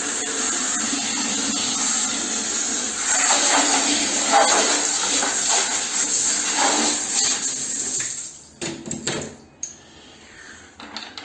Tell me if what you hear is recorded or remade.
recorded